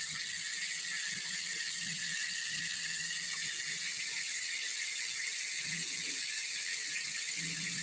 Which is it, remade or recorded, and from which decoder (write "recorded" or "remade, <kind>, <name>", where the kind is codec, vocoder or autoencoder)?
remade, vocoder, BigVGAN v2